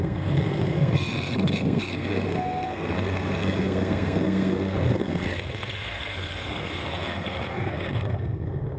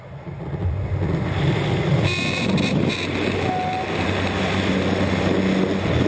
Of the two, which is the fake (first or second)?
first